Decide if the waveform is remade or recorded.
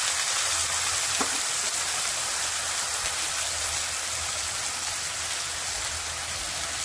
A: recorded